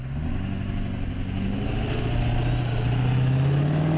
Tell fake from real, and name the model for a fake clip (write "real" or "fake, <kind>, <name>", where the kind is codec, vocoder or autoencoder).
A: real